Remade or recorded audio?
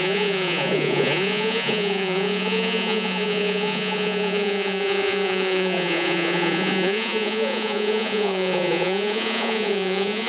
remade